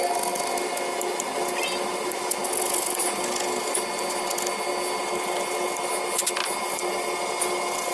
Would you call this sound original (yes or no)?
yes